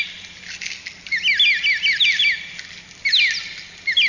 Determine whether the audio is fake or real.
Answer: real